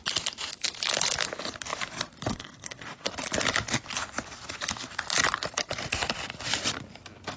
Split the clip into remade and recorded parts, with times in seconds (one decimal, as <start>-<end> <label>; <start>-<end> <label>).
0.0-2.3 recorded; 2.3-3.1 remade; 3.1-7.4 recorded

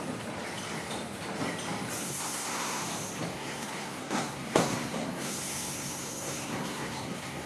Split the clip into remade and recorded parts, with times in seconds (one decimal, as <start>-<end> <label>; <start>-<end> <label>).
0.0-2.0 recorded; 2.0-2.8 remade; 2.8-3.3 recorded; 3.3-7.5 remade

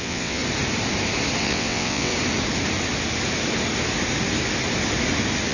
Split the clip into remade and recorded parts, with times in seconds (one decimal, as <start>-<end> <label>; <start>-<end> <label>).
0.0-0.4 remade; 0.4-1.4 recorded; 1.4-2.1 remade; 2.1-5.5 recorded

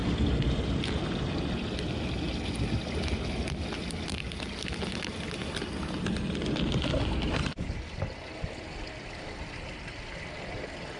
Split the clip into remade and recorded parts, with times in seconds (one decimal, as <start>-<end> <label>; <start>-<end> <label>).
0.0-11.0 recorded

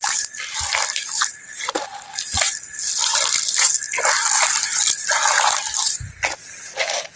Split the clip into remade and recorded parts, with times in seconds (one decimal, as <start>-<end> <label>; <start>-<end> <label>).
0.0-7.2 recorded

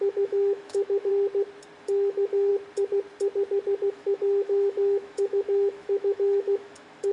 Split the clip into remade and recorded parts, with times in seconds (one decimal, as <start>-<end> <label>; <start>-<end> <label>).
0.0-1.1 remade; 1.1-1.8 recorded; 1.8-2.5 remade; 2.5-3.9 recorded; 3.9-7.1 remade